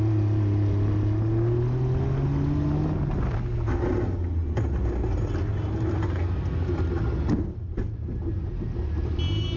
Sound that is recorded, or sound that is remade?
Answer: recorded